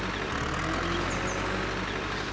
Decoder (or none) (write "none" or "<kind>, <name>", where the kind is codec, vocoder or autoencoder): none